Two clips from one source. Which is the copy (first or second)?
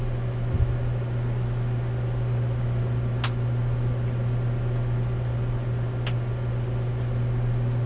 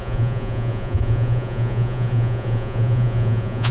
second